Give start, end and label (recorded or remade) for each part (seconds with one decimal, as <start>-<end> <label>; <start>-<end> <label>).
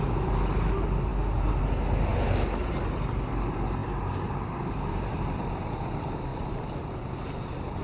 0.0-3.8 recorded; 3.8-5.3 remade; 5.3-6.3 recorded; 6.3-7.8 remade